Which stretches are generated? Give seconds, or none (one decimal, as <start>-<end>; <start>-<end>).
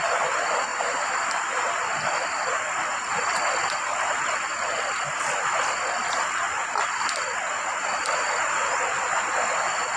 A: 0.7-1.6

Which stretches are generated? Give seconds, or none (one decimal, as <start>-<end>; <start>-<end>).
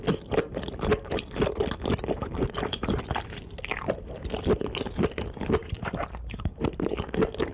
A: 2.2-3.0; 5.6-6.6